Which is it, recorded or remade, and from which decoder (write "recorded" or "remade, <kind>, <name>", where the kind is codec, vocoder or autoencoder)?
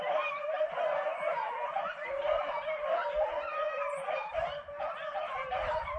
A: remade, vocoder, BigVGAN v2